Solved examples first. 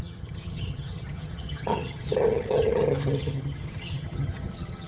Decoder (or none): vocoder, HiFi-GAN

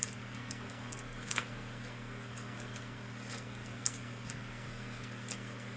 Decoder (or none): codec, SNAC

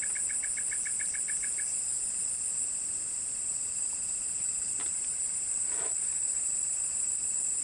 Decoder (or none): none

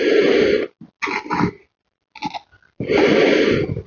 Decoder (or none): none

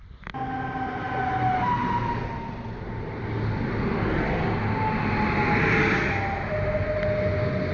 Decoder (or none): none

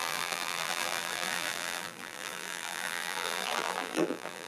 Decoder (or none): vocoder, BigVGAN v2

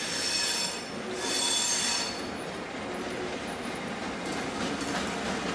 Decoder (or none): none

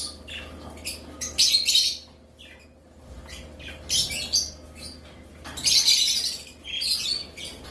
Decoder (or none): none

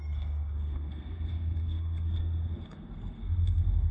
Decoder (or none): codec, SNAC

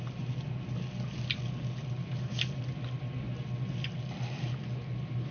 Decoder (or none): none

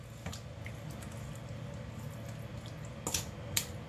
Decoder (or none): none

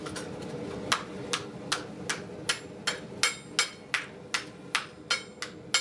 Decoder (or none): none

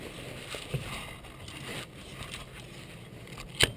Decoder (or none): none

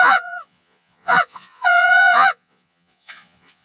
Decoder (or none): vocoder, Vocos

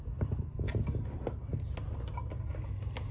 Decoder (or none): none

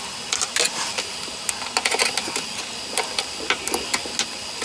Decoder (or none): none